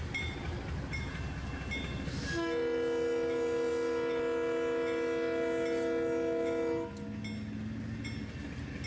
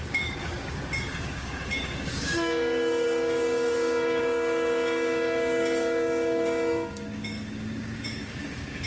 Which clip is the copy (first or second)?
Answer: second